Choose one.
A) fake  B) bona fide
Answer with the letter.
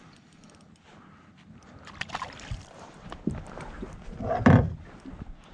A